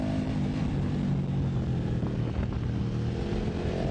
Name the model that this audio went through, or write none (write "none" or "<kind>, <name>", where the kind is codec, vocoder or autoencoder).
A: none